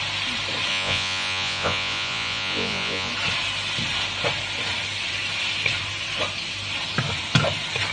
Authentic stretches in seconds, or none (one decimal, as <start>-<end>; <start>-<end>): 0.0-0.7; 3.1-7.9